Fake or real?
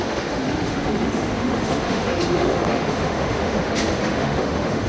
fake